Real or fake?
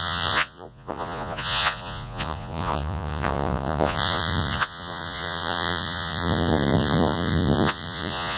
fake